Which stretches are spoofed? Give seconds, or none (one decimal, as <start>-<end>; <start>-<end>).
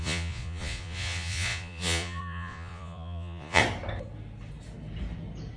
0.0-3.6